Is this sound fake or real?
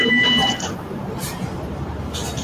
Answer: fake